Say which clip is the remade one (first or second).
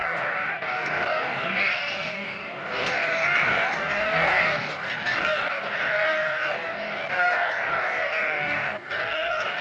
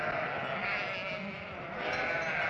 first